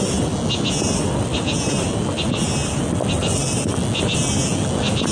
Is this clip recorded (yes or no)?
yes